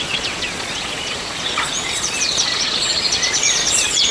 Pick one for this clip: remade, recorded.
remade